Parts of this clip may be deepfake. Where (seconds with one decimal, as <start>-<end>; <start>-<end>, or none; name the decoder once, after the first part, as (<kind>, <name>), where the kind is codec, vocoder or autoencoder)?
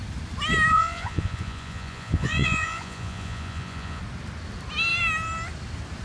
0.7-4.0 (vocoder, Vocos)